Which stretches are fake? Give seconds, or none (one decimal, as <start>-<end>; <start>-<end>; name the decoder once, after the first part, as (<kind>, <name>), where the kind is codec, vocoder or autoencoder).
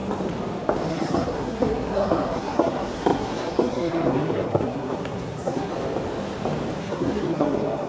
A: 0.9-5.7 (codec, SNAC); 6.8-7.9